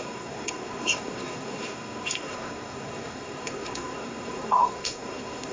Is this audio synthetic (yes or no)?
yes